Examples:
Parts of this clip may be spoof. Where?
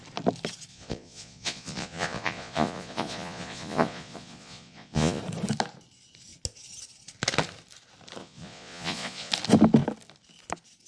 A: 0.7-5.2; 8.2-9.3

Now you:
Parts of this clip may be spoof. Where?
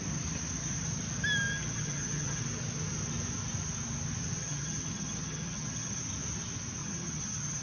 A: 1.5-2.4; 4.4-6.0; 6.8-7.6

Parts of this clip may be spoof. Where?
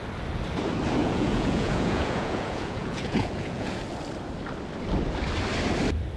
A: 1.0-3.8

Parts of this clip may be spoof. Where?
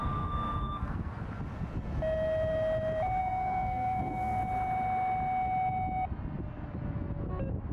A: 0.0-1.1; 3.2-4.4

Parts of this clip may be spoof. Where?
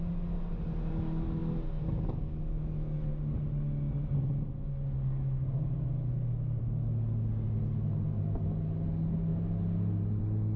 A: none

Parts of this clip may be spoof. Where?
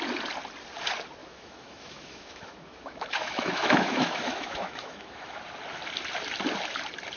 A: 1.2-5.4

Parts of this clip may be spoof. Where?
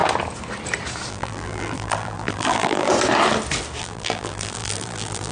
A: 1.1-2.9; 3.8-5.3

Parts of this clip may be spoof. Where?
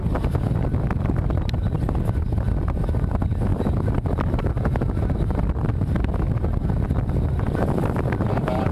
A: none